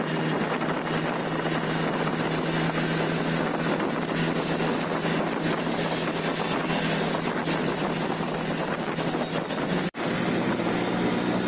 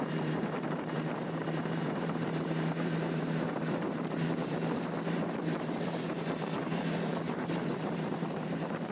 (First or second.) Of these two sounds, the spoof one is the second